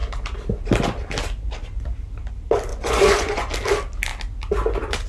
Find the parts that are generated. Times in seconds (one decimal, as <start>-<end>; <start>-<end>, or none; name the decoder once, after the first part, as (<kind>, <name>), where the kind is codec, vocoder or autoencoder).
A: 2.7-3.5 (vocoder, Vocos)